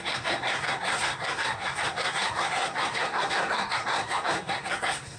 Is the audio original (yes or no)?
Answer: no